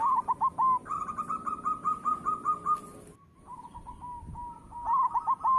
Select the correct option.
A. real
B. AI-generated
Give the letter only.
A